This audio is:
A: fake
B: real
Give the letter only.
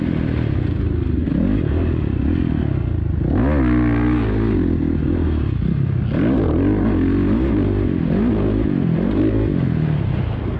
B